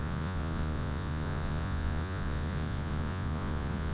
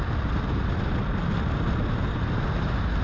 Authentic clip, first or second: second